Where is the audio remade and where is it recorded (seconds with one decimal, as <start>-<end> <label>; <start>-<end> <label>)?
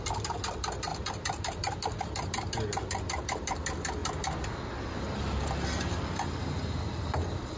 0.0-7.6 recorded